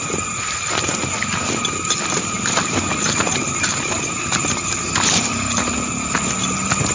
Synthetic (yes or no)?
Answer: no